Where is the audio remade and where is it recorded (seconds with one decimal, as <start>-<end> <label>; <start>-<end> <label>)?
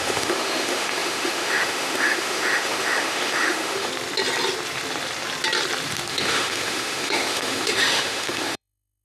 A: 0.0-3.9 remade; 3.9-6.1 recorded; 6.1-9.0 remade